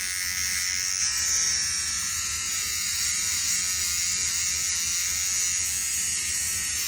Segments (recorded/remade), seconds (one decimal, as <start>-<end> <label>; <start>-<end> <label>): 0.0-1.0 recorded; 1.0-3.6 remade; 3.6-5.8 recorded; 5.8-6.9 remade